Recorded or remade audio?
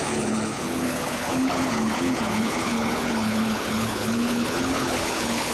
remade